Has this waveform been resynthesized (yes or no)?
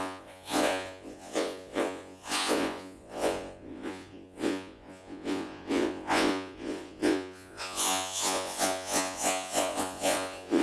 yes